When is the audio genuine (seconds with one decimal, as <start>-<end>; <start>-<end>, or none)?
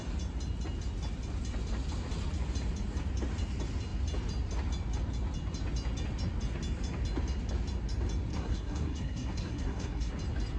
0.0-8.3; 10.1-10.6